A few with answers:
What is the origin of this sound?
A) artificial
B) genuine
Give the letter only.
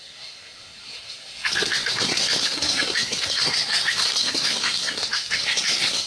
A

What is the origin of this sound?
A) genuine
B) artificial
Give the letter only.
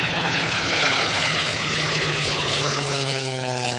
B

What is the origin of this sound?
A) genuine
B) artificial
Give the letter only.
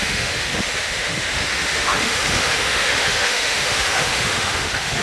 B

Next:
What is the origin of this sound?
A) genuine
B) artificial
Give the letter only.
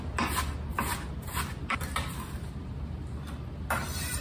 A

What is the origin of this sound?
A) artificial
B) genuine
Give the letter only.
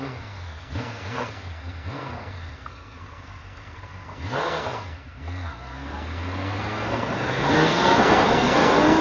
A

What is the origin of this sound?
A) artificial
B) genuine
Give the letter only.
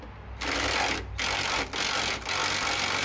B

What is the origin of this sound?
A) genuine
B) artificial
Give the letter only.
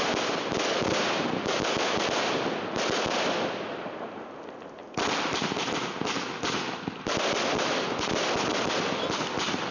A